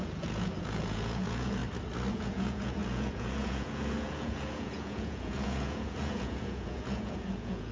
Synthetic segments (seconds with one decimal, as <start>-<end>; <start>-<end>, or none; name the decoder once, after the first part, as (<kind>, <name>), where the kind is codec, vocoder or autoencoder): 0.0-1.6 (vocoder, Vocos); 2.1-7.7